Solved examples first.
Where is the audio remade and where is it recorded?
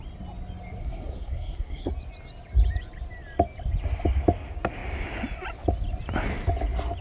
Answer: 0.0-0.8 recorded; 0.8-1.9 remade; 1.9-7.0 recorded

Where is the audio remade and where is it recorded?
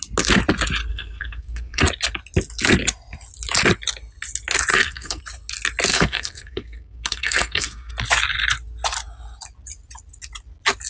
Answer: 0.0-0.9 recorded; 0.9-1.8 remade; 1.8-4.7 recorded; 4.7-5.2 remade; 5.2-5.9 recorded; 5.9-7.9 remade; 7.9-10.9 recorded